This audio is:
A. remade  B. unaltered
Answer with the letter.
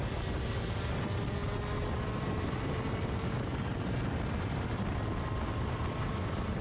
B